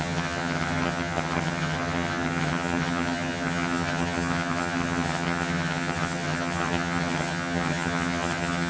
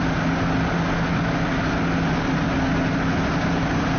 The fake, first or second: first